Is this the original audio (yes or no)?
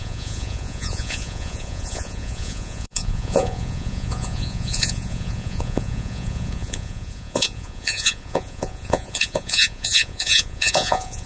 no